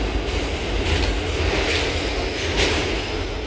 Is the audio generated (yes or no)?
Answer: no